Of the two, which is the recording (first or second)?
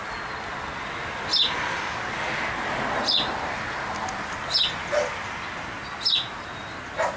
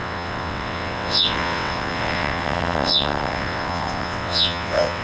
first